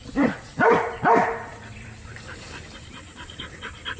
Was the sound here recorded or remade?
remade